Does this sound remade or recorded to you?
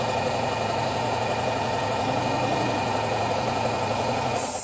remade